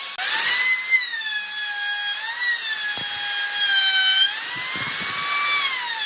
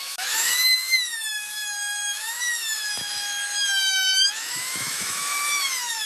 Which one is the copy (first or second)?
second